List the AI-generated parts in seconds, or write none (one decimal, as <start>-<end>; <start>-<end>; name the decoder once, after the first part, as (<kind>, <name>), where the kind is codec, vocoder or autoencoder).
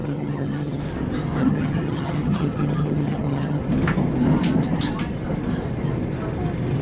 0.0-0.8 (vocoder, HiFi-GAN); 1.4-3.6